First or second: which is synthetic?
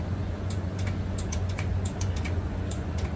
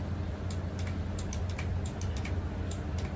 first